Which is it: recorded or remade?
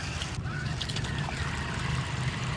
recorded